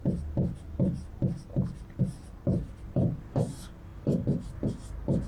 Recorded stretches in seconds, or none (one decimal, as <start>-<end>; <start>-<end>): 0.0-5.3